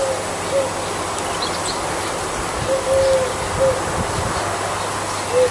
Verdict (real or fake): real